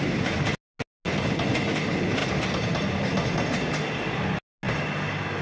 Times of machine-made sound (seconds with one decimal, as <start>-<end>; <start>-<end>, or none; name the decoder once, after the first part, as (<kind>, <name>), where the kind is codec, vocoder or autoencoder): none